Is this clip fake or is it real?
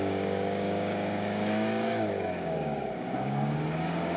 fake